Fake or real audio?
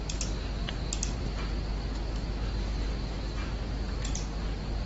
real